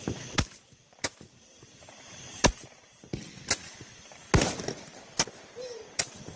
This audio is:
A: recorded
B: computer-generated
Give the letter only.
A